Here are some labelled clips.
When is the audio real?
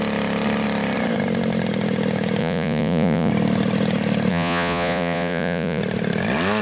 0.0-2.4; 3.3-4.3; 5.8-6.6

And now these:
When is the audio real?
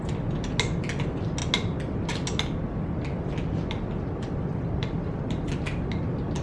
0.0-6.4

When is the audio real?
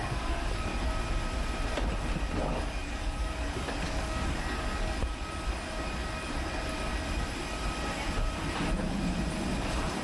0.7-2.4; 5.0-10.0